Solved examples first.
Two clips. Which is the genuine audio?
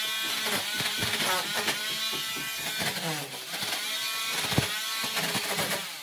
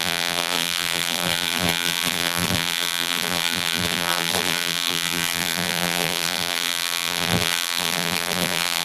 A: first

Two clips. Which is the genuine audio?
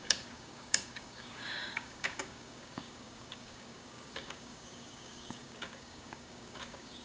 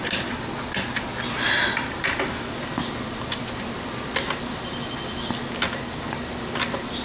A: second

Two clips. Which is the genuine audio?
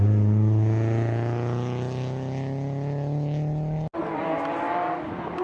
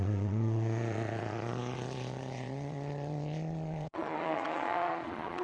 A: first